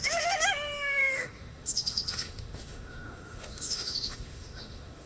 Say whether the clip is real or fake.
fake